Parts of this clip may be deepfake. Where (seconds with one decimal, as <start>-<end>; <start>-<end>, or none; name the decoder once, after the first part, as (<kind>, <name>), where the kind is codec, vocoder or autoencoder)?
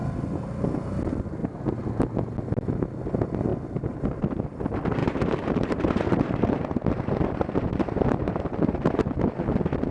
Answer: 1.4-1.9 (vocoder, BigVGAN v2); 3.5-4.0; 5.0-9.0